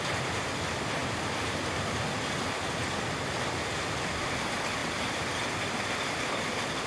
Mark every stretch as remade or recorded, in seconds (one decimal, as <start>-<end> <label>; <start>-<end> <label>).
0.0-4.8 recorded; 4.8-5.4 remade; 5.4-6.9 recorded